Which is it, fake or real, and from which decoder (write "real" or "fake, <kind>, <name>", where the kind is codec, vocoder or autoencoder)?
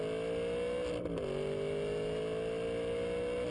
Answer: real